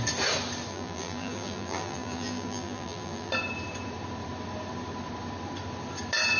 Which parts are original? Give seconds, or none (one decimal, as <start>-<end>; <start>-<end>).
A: 0.0-0.7; 3.3-6.4